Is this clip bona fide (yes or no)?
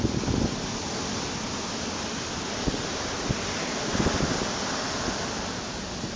yes